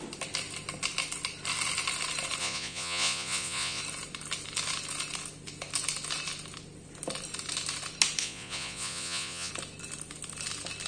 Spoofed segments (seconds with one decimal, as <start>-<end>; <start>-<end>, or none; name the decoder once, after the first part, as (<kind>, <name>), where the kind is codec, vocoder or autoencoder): 2.4-3.8 (vocoder, Vocos); 8.2-9.5